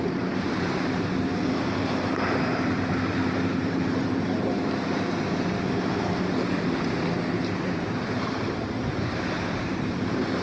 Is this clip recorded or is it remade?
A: remade